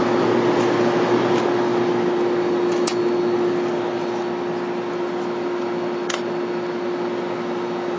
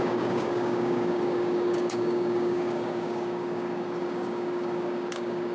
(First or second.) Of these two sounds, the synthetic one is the second